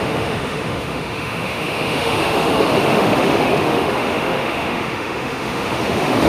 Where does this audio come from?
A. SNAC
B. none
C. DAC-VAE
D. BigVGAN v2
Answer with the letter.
C